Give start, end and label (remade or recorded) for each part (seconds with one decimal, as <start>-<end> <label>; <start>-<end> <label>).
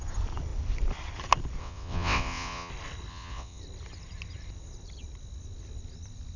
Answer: 0.0-1.6 recorded; 1.6-2.7 remade; 2.7-3.1 recorded; 3.1-3.6 remade; 3.6-6.4 recorded